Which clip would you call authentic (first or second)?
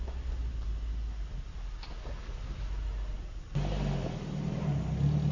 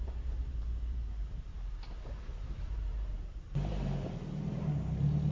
first